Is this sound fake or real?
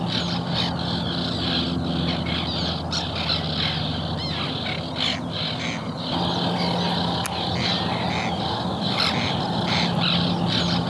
real